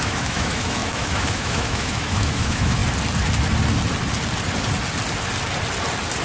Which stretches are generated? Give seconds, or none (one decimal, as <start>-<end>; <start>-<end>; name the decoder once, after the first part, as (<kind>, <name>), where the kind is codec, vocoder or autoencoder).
0.0-2.8 (autoencoder, DAC-VAE)